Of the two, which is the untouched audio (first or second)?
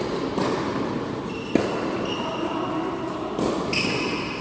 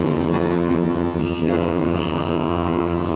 first